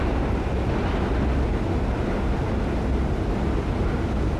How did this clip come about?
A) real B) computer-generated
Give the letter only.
A